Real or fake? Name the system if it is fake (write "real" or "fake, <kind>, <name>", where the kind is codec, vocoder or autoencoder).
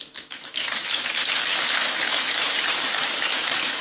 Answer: fake, autoencoder, DAC-VAE